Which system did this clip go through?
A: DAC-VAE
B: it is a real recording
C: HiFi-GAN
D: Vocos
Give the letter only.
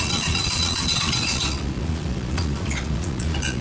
D